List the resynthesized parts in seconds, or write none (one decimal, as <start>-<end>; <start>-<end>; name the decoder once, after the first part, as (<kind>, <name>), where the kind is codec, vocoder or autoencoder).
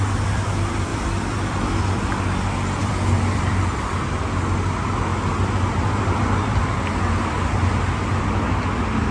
0.9-1.8 (vocoder, BigVGAN v2); 2.8-4.2